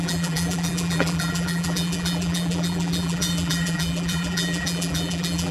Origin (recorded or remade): remade